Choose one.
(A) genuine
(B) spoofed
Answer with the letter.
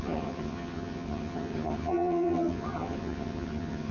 B